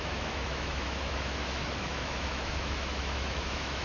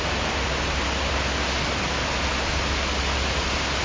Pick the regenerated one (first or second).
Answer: first